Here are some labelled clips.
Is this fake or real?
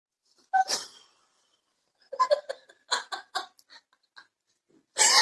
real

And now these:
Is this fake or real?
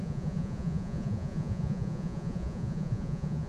fake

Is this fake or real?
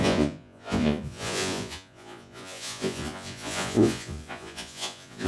fake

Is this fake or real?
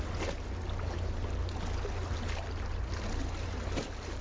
real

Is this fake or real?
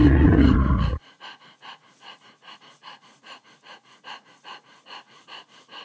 fake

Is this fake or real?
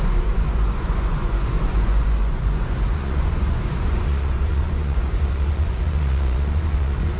fake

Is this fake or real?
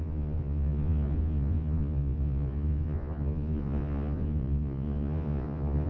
fake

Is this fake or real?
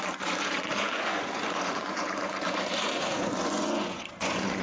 fake